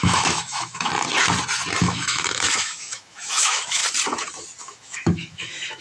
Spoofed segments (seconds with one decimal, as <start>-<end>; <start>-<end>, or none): 0.0-0.9; 1.8-3.8; 4.6-5.8